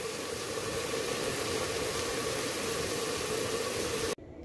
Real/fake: real